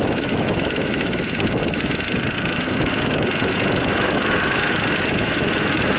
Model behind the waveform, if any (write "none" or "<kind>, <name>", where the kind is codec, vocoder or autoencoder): autoencoder, DAC-VAE